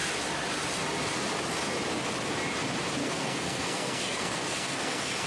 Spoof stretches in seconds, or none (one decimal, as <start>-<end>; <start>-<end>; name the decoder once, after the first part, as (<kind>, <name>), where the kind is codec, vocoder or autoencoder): 3.0-5.3 (codec, SNAC)